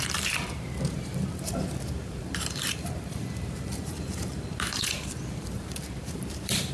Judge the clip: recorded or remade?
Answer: remade